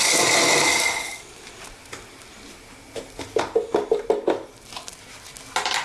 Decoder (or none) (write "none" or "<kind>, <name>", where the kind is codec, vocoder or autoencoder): none